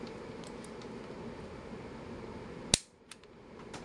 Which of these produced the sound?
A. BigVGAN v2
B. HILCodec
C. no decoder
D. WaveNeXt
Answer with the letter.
C